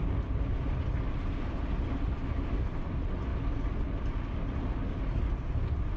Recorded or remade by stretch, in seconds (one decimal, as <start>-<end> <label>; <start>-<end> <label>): 0.0-6.0 recorded